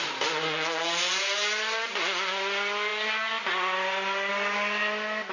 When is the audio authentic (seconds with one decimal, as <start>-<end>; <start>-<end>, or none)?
0.0-5.3